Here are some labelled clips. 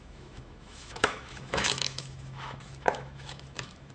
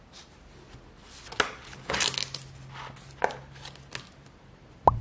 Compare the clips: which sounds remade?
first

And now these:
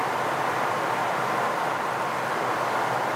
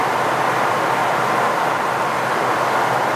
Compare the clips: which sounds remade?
first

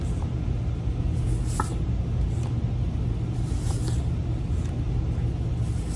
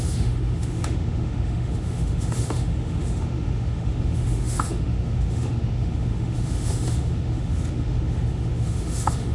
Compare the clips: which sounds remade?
second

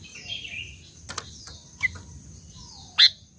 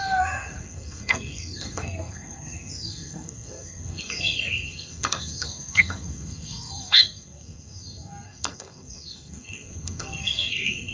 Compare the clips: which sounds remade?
second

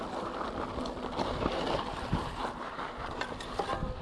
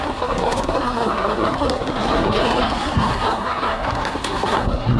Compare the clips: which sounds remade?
second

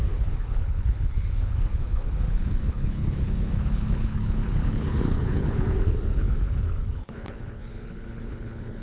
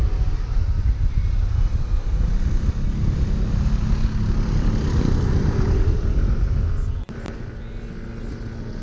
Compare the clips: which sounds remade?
first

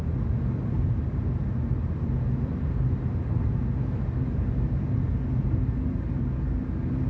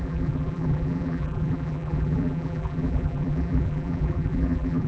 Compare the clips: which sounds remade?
second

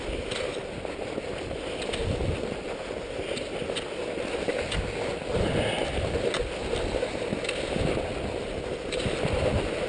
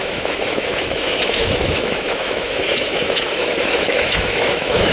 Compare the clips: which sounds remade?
second